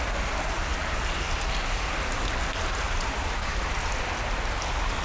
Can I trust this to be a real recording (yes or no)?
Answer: yes